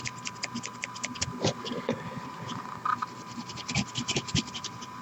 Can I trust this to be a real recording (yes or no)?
no